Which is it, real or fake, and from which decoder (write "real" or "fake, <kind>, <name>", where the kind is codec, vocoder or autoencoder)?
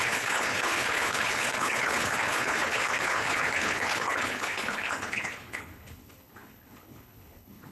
fake, codec, HILCodec